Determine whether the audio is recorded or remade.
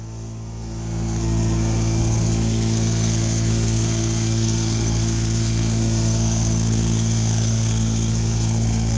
remade